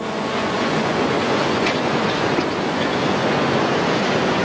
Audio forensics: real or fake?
fake